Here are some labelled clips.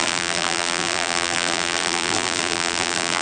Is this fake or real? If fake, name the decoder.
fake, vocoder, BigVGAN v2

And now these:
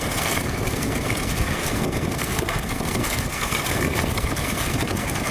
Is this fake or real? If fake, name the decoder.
fake, codec, SNAC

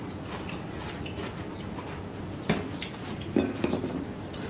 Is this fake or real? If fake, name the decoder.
real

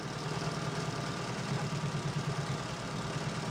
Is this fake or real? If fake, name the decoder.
real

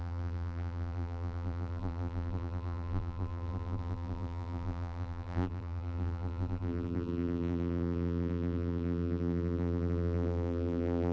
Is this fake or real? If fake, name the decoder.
fake, vocoder, BigVGAN v2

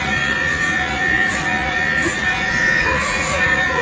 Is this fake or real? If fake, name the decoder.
fake, vocoder, Vocos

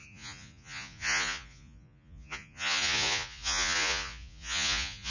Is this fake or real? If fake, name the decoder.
fake, vocoder, Vocos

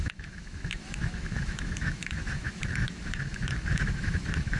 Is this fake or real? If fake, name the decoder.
fake, autoencoder, DAC-VAE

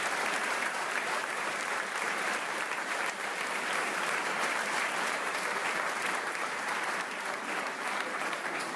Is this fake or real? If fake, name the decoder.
fake, vocoder, BigVGAN v2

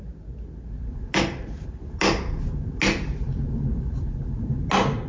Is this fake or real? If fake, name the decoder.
real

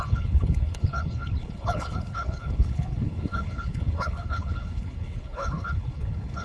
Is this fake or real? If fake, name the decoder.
fake, codec, HILCodec